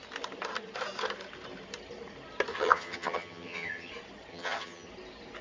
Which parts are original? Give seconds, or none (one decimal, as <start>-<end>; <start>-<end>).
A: 0.0-2.5; 3.9-4.3; 4.9-5.4